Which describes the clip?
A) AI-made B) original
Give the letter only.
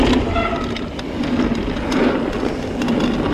B